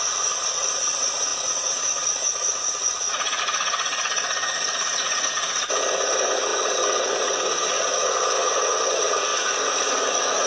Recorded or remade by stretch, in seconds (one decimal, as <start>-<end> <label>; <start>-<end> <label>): 0.0-10.5 remade